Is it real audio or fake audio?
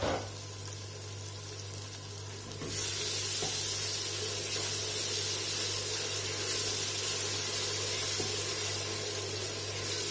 real